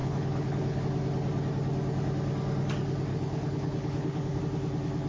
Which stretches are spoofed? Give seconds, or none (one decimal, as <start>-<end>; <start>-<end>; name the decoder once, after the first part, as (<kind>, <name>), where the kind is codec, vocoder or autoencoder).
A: 0.0-0.8 (codec, HILCodec); 3.1-4.4